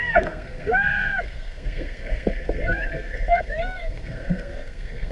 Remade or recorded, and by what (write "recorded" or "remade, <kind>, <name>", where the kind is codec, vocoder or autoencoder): remade, codec, SNAC